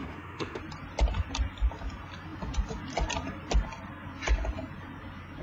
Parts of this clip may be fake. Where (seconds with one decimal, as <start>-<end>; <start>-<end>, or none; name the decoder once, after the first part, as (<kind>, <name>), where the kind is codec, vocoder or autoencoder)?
0.0-0.6 (autoencoder, DAC-VAE)